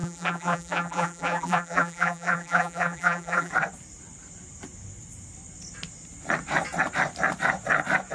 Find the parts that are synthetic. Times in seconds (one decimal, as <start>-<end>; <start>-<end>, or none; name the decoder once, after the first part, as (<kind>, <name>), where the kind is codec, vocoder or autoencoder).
0.0-3.5 (vocoder, BigVGAN v2)